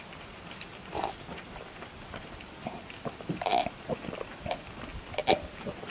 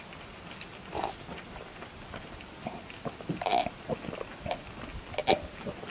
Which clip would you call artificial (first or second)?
first